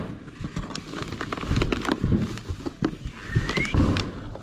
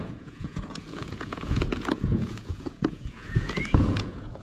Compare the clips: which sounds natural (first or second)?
first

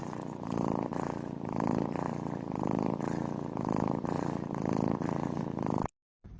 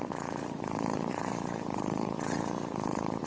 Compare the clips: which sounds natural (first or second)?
first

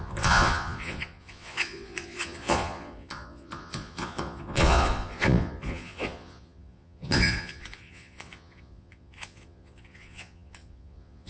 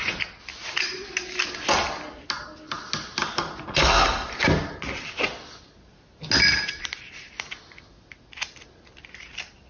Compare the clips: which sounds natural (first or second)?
second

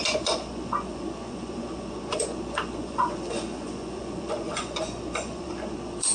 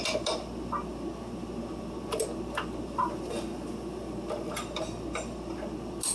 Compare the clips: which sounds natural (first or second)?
second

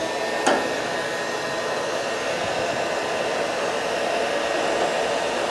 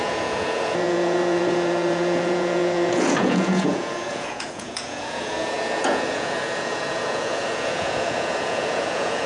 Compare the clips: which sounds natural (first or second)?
first